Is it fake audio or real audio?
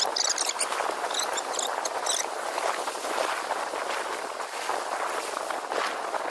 real